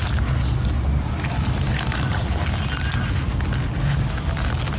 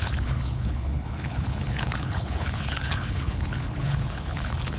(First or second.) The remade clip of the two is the second